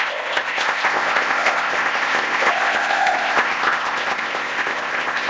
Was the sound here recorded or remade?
remade